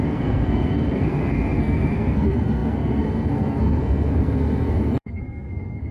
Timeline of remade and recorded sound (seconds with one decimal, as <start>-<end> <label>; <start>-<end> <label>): 0.0-5.9 remade

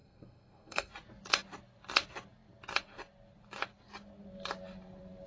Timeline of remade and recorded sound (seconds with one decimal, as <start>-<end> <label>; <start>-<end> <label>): 0.0-0.9 remade; 0.9-5.3 recorded

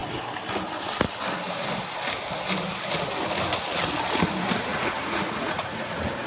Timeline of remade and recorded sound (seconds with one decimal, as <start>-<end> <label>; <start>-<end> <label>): 0.0-4.7 recorded; 4.7-6.3 remade

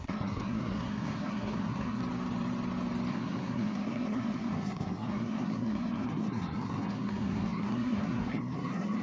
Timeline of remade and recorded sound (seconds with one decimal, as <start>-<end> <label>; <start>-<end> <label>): 0.0-2.0 remade; 2.0-3.1 recorded; 3.1-9.0 remade

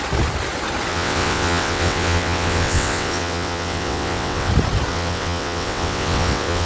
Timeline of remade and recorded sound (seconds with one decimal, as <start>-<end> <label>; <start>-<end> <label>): 0.0-0.9 recorded; 0.9-4.5 remade; 4.5-4.9 recorded; 4.9-6.7 remade

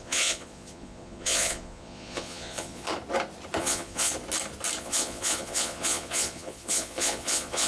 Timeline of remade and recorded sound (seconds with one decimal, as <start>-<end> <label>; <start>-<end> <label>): 0.0-2.9 remade; 2.9-3.6 recorded; 3.6-4.1 remade; 4.1-4.8 recorded; 4.8-7.7 remade